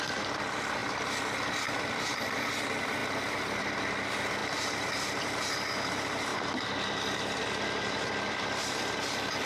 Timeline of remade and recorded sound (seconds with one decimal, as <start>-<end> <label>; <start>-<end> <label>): 0.0-9.5 recorded